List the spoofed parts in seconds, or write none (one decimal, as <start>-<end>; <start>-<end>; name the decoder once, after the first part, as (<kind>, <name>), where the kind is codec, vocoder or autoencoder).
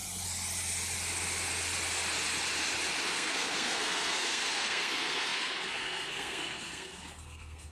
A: 3.1-7.7 (codec, SNAC)